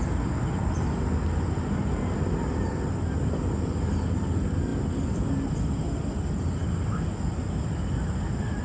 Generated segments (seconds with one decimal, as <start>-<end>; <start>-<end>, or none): none